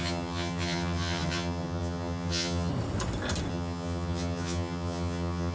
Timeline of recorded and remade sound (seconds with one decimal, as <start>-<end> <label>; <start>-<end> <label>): 0.0-2.7 remade; 2.7-3.5 recorded; 3.5-5.5 remade